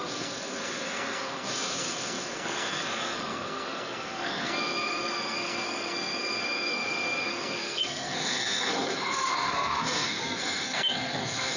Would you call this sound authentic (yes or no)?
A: no